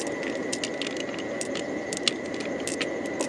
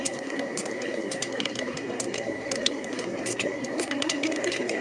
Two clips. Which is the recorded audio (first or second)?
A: first